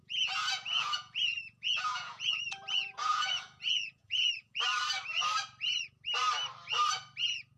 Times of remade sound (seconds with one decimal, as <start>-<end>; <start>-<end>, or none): 0.0-4.6